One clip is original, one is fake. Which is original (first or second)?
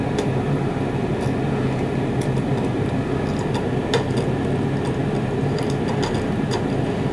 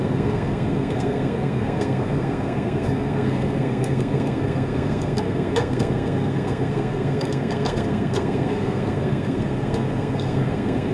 first